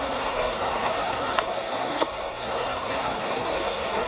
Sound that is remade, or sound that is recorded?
remade